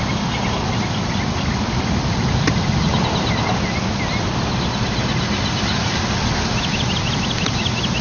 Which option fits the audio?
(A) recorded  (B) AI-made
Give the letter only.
A